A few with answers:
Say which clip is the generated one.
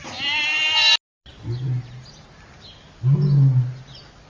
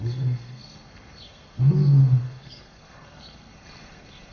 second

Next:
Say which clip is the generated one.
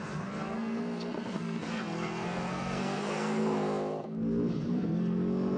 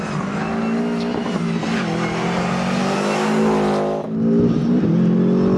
first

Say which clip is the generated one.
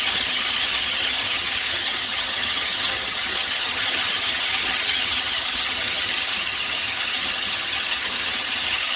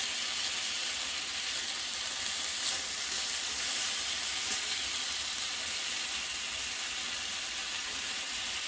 first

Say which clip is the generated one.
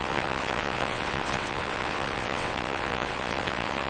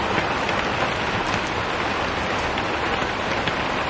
first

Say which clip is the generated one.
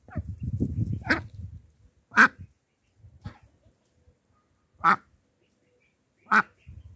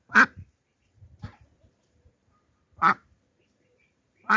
second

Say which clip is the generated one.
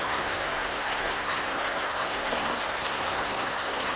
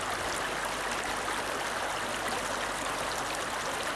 first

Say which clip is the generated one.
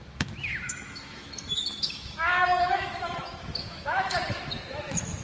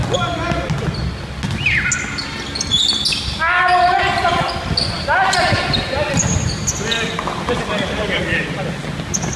first